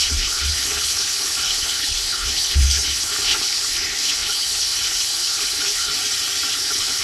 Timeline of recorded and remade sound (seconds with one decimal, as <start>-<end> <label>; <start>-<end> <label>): 0.0-5.9 remade; 5.9-6.5 recorded; 6.5-7.0 remade